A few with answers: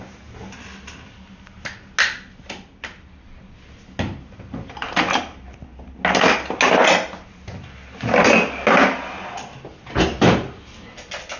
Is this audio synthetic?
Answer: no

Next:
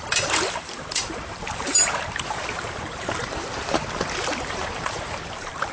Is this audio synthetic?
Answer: yes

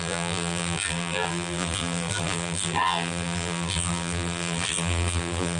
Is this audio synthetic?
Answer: yes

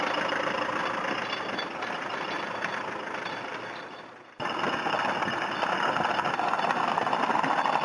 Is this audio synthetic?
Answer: no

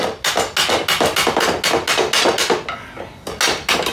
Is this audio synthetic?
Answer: no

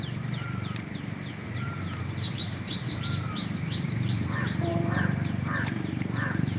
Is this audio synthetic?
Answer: yes